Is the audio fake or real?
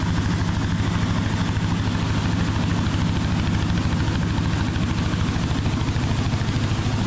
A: real